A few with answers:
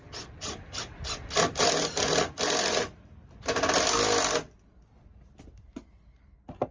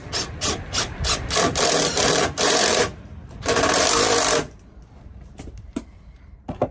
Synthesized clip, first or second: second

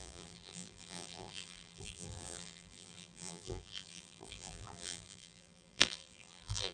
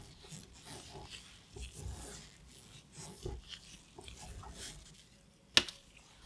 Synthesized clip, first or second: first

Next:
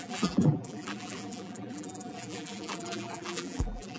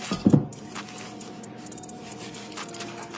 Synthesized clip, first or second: first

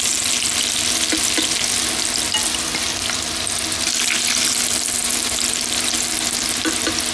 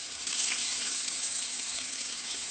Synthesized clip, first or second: second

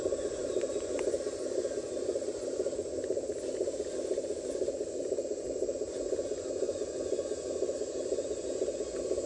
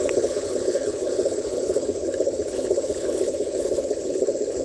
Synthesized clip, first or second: second